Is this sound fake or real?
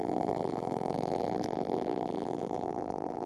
fake